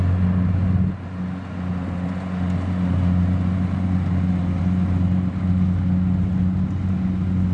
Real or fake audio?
real